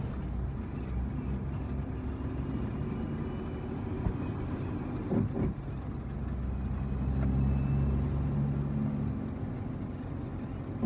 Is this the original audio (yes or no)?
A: yes